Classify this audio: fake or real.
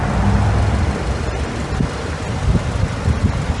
real